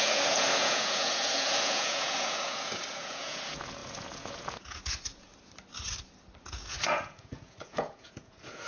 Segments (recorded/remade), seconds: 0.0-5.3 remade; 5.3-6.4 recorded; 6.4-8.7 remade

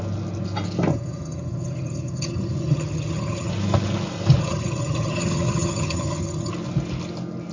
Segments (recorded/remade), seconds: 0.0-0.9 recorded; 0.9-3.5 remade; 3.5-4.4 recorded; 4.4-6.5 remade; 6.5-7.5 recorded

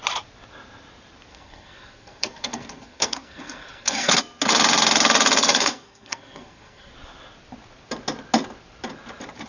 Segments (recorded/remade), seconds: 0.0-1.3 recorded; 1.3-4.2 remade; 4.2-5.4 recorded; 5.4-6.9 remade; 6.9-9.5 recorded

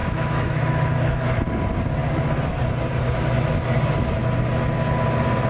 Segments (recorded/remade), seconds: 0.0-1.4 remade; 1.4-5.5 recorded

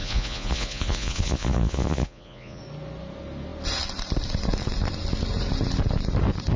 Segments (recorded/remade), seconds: 0.0-2.6 remade; 2.6-6.6 recorded

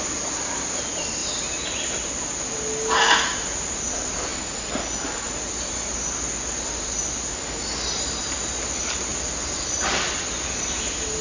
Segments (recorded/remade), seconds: 0.0-11.2 recorded

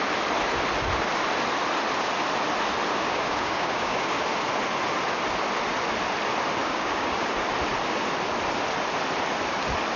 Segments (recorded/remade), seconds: 0.0-2.9 recorded; 2.9-4.2 remade; 4.2-6.6 recorded; 6.6-7.3 remade; 7.3-10.0 recorded

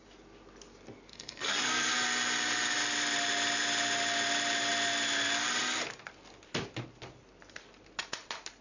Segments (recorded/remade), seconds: 0.0-1.1 recorded; 1.1-1.9 remade; 1.9-8.6 recorded